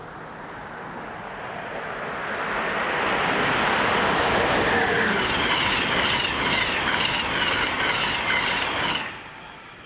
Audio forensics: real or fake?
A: real